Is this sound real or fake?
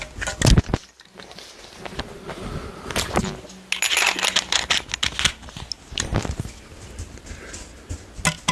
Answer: real